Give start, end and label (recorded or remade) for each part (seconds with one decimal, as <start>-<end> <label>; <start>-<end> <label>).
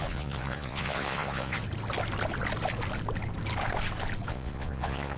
0.0-1.6 remade; 1.6-4.3 recorded; 4.3-5.2 remade